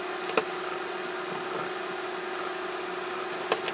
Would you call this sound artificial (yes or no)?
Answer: no